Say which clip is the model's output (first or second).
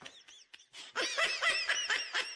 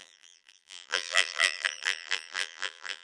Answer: second